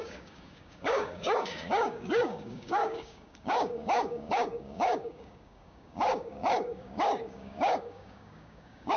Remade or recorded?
remade